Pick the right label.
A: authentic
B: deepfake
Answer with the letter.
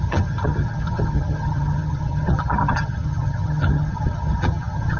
B